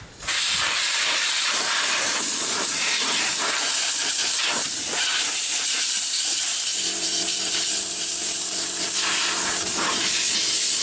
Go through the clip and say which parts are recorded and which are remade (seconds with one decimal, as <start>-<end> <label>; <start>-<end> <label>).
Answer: 0.0-10.8 remade